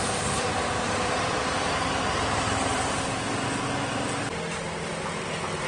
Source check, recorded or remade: recorded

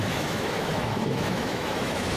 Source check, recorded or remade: remade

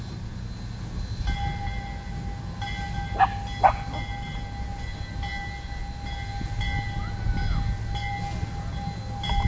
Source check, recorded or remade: recorded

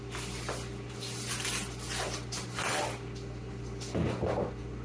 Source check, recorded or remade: recorded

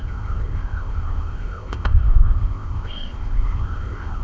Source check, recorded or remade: remade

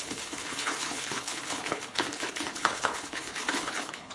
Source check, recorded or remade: remade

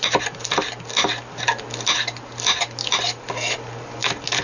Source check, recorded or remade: recorded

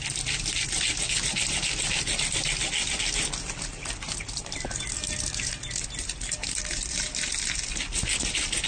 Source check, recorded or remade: recorded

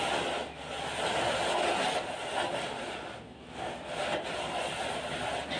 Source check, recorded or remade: recorded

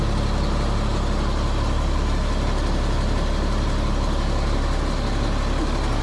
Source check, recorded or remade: recorded